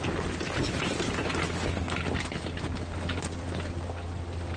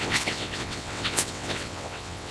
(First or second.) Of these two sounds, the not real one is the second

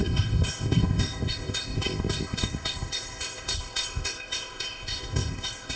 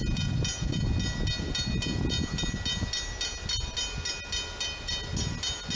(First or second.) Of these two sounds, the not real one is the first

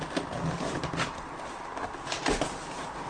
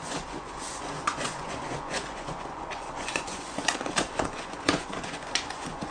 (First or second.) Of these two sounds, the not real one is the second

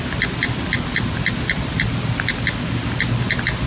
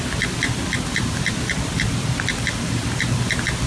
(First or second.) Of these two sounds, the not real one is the second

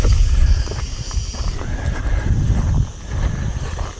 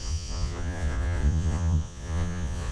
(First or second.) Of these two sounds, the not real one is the second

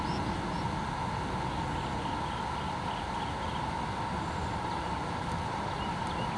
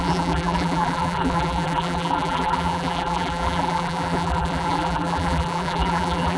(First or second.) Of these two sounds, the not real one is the second